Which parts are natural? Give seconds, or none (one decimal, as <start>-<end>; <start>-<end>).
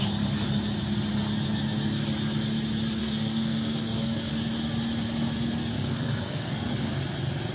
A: 0.0-3.0; 4.3-5.6; 6.6-7.5